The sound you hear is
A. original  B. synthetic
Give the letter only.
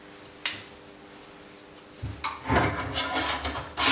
A